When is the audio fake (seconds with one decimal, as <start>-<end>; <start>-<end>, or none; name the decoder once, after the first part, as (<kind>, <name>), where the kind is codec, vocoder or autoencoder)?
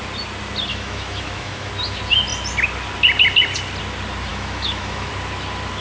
0.7-1.7 (autoencoder, DAC-VAE); 4.3-5.1